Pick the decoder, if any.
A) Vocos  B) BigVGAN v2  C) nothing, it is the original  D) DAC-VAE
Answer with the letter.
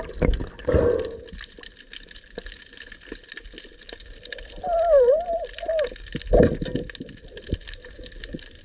C